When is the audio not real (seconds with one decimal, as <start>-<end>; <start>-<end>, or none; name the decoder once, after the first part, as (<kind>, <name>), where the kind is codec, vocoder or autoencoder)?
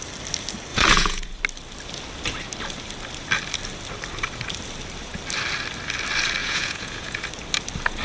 0.7-1.4 (vocoder, Vocos); 6.4-7.3